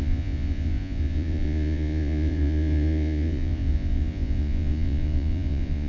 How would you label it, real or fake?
fake